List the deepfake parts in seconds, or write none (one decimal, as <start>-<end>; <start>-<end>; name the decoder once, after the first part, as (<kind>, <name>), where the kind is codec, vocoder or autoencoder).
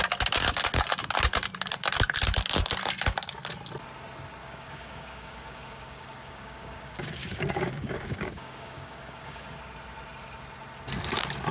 4.4-9.6 (codec, DAC)